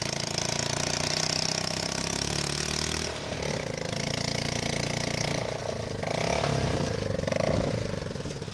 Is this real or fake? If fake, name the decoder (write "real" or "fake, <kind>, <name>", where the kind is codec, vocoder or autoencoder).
real